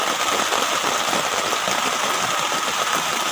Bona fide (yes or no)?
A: yes